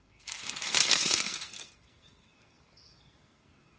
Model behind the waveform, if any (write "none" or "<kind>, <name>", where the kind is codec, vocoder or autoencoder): codec, SNAC